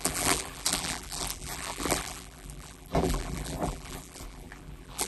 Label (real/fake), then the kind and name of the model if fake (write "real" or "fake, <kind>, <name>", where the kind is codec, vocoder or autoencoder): fake, vocoder, BigVGAN v2